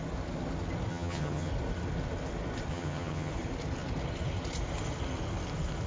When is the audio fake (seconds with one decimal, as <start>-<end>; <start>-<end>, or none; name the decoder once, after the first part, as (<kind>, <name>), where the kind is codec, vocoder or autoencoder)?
0.9-1.5 (vocoder, HiFi-GAN); 2.7-3.3